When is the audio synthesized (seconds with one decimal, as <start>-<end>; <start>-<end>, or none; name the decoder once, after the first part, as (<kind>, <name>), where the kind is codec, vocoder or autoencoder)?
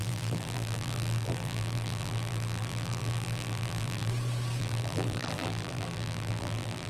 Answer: 0.0-4.1 (vocoder, BigVGAN v2); 4.6-6.9